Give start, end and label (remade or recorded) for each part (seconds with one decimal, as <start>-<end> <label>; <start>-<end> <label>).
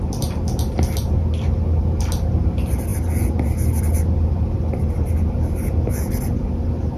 0.0-7.0 recorded